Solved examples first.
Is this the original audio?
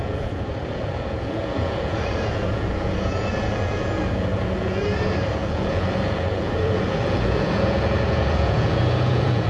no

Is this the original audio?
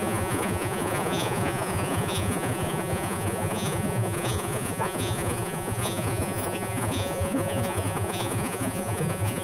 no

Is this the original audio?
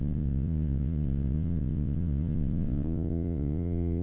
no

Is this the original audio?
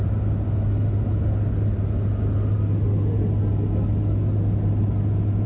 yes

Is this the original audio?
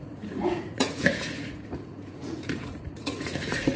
no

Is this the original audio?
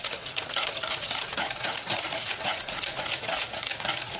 no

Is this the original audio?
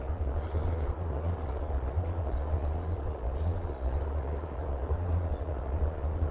no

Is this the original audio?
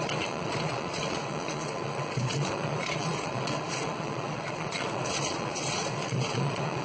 no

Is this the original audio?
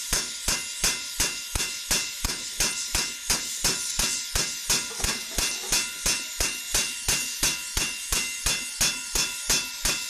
yes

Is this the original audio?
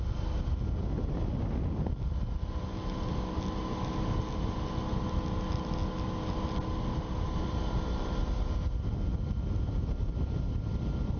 yes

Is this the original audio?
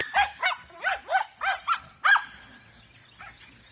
yes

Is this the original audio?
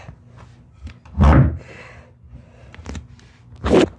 yes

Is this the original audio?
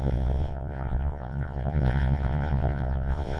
no